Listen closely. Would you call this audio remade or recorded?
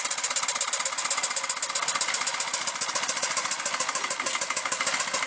recorded